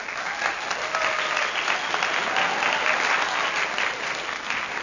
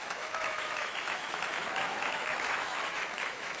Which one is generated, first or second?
second